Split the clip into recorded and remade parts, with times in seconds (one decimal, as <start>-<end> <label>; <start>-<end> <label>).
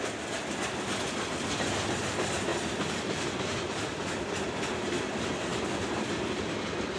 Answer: 0.0-2.5 recorded; 2.5-4.3 remade; 4.3-5.5 recorded; 5.5-6.3 remade; 6.3-7.0 recorded